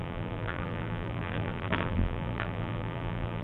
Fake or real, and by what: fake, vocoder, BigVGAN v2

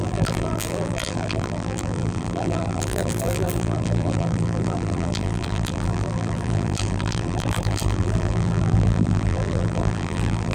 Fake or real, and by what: fake, vocoder, BigVGAN v2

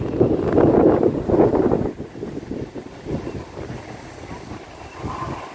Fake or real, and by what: fake, vocoder, BigVGAN v2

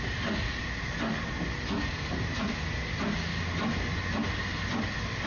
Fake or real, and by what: real